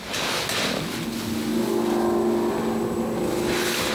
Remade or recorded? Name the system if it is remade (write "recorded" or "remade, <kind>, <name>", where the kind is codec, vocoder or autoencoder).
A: recorded